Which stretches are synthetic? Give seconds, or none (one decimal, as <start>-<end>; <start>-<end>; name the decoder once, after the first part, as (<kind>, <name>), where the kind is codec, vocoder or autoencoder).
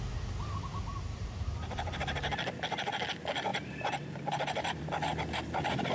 0.9-2.3 (vocoder, BigVGAN v2); 3.5-4.9